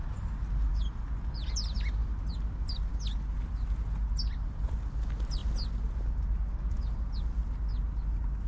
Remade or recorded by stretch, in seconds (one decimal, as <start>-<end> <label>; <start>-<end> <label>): 0.0-8.5 recorded

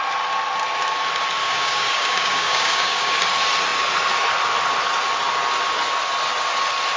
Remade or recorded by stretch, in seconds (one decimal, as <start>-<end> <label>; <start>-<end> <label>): 0.0-1.4 recorded; 1.4-3.2 remade; 3.2-7.0 recorded

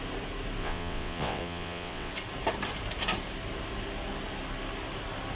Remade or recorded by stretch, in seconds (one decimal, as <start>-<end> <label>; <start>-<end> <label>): 0.0-0.6 recorded; 0.6-2.1 remade; 2.1-5.4 recorded

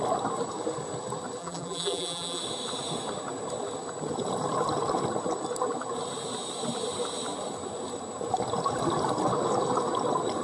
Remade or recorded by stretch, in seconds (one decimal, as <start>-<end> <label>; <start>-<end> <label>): 0.0-1.4 recorded; 1.4-2.4 remade; 2.4-10.4 recorded

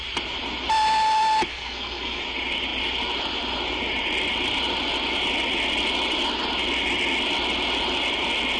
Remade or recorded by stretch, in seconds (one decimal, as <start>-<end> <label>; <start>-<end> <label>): 0.0-1.5 recorded; 1.5-2.2 remade; 2.2-8.6 recorded

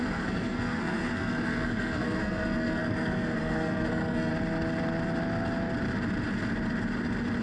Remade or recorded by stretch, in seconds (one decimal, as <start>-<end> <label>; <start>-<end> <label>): 0.0-4.3 remade; 4.3-7.4 recorded